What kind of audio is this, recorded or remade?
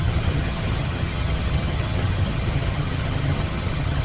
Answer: remade